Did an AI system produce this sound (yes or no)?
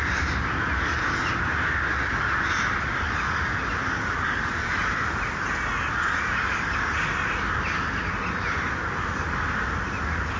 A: no